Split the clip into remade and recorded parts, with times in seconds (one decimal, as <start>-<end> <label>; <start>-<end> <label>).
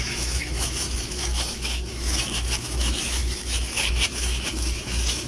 0.0-5.3 remade